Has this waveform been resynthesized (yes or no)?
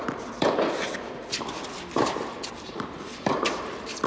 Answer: yes